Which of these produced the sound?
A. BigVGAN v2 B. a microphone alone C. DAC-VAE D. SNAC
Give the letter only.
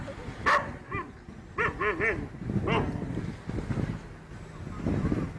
B